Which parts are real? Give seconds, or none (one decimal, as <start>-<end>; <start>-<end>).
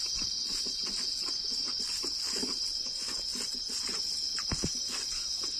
0.0-5.6